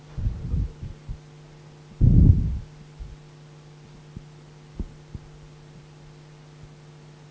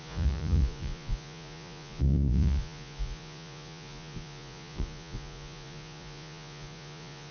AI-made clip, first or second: second